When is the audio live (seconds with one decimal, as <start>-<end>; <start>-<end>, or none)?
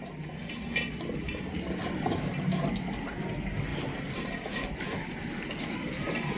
0.0-6.4